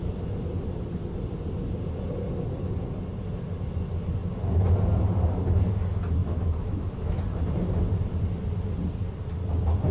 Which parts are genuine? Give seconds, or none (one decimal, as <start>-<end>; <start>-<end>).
0.0-6.2; 7.2-9.9

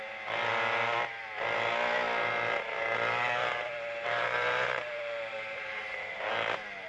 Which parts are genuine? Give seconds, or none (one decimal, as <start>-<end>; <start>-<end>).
0.0-3.4; 5.8-6.9

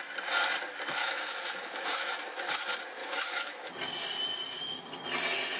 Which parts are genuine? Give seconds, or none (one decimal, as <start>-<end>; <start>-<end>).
0.0-1.0; 2.5-3.0; 3.7-5.6